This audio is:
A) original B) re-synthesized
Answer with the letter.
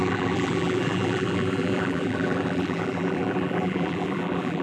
B